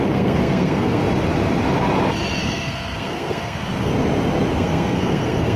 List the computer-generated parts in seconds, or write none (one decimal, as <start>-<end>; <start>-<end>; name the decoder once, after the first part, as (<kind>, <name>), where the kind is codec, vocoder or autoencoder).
0.0-1.0 (codec, SNAC); 2.4-3.9; 4.5-5.6